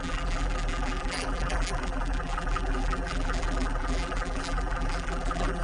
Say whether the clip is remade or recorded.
remade